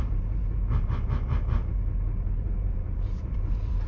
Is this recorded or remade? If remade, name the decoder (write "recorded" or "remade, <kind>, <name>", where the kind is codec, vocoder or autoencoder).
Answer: remade, vocoder, BigVGAN v2